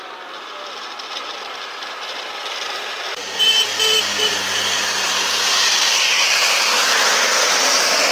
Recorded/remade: recorded